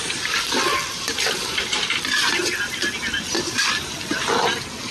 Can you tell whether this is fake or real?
fake